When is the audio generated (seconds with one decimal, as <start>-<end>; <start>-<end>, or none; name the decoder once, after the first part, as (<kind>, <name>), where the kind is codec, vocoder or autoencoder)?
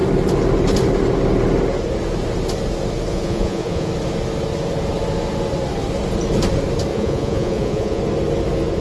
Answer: 3.1-3.9 (vocoder, Vocos); 6.9-8.0